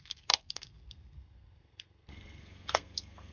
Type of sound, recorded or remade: remade